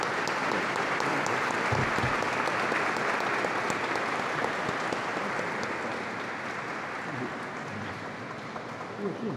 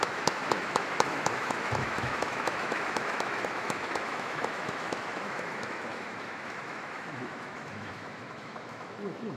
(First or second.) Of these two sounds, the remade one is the second